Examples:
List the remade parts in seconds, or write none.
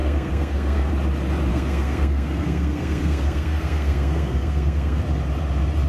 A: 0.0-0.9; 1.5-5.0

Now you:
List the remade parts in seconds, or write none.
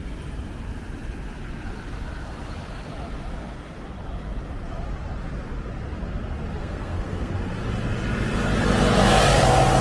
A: 6.6-7.3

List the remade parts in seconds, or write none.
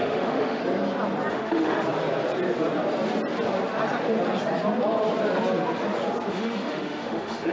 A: 0.0-0.6; 1.3-1.8; 6.3-7.5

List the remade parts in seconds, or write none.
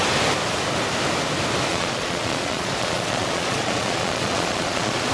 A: 1.7-5.1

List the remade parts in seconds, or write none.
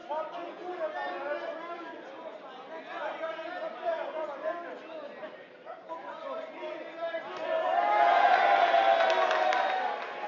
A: none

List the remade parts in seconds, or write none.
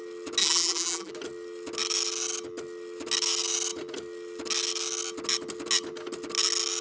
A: 0.4-1.1